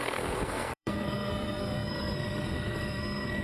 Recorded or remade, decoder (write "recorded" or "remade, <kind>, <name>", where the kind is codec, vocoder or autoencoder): remade, codec, SNAC